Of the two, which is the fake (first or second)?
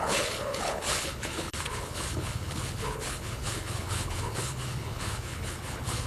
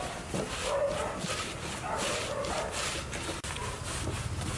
first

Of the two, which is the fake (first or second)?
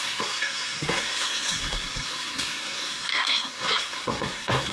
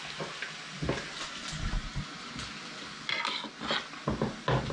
first